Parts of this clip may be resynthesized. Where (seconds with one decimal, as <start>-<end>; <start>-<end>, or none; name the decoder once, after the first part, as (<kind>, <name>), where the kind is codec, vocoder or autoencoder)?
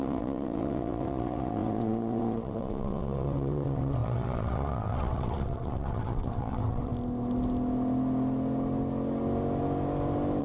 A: 0.0-6.9 (vocoder, WaveNeXt)